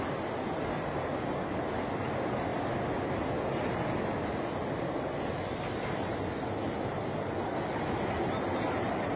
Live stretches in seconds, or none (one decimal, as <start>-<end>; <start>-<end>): 0.0-9.2